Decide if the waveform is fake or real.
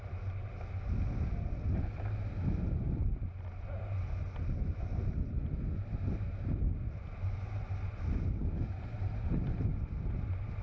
real